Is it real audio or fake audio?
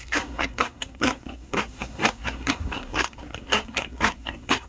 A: fake